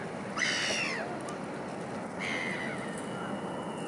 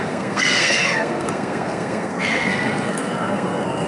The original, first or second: first